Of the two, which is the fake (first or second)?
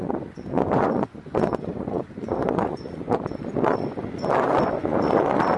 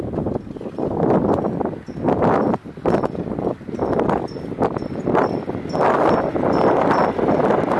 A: first